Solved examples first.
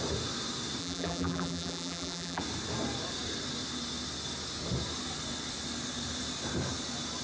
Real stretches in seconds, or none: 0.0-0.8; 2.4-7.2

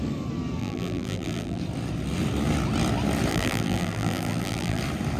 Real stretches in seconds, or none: 0.0-0.6; 1.6-3.3; 4.8-5.2

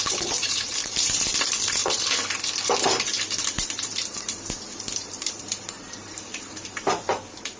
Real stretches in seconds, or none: 1.8-2.6; 3.9-5.1

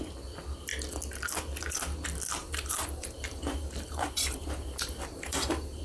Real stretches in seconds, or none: 0.0-2.4